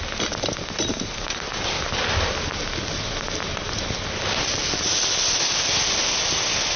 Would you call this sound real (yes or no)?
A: yes